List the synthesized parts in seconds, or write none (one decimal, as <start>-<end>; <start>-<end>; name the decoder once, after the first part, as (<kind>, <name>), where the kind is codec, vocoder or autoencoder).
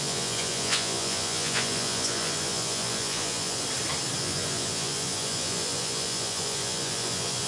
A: 0.0-3.6 (vocoder, Vocos); 4.2-7.5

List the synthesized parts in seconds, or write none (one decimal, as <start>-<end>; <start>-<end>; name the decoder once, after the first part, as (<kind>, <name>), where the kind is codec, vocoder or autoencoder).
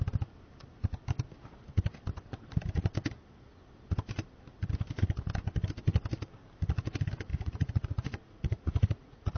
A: 7.3-9.4 (vocoder, Vocos)